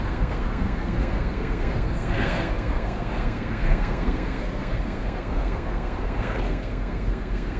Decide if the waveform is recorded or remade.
remade